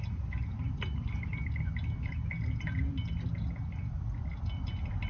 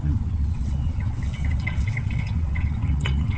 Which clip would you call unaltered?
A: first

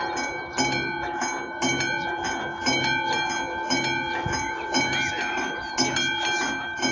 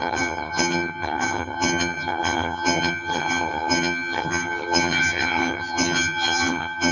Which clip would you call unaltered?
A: first